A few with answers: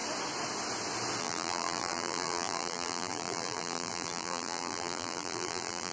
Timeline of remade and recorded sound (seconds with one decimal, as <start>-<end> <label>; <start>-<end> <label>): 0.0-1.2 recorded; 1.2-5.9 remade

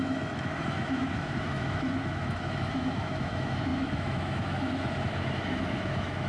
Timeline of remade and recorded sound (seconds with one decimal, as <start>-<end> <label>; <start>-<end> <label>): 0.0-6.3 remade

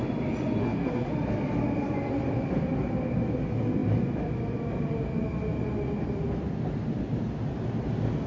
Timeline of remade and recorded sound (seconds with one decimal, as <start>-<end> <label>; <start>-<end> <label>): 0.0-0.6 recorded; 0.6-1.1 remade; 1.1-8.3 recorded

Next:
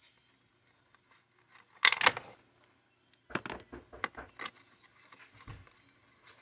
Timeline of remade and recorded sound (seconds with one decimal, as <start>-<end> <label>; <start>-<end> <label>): 0.0-6.4 recorded

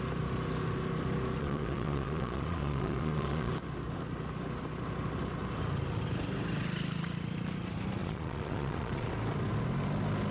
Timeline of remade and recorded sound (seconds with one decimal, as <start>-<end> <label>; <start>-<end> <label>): 0.0-1.4 recorded; 1.4-3.5 remade; 3.5-8.0 recorded; 8.0-9.1 remade; 9.1-10.3 recorded

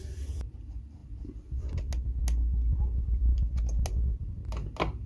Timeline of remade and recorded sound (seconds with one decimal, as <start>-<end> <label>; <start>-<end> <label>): 0.0-5.1 recorded

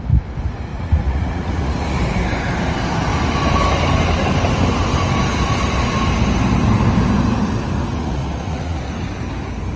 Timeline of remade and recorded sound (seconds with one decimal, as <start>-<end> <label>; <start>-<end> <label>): 0.0-0.7 recorded; 0.7-2.0 remade; 2.0-8.0 recorded; 8.0-8.9 remade; 8.9-9.8 recorded

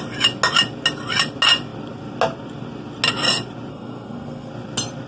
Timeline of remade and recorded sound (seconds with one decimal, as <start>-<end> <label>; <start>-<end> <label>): 0.0-3.7 recorded; 3.7-4.5 remade; 4.5-5.1 recorded